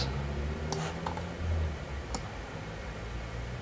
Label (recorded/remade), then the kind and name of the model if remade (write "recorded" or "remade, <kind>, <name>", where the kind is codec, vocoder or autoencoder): recorded